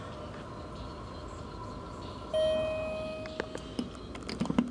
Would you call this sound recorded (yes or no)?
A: yes